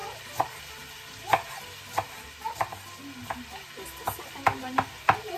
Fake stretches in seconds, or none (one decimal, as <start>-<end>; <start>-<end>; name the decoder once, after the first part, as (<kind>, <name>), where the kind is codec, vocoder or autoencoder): 0.0-0.6 (vocoder, BigVGAN v2)